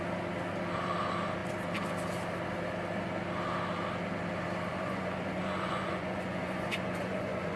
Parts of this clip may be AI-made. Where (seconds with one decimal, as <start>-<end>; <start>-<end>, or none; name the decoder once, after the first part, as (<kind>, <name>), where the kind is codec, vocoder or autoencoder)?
4.7-7.6 (vocoder, Vocos)